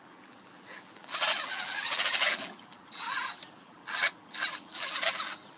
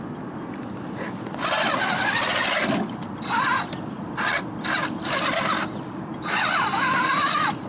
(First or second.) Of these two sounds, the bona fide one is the second